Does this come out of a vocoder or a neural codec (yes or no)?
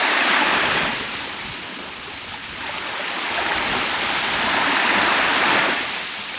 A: yes